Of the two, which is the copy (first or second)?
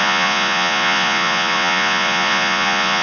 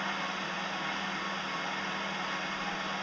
first